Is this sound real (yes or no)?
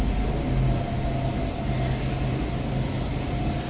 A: yes